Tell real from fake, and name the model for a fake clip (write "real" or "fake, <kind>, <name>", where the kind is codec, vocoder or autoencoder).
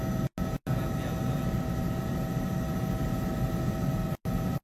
real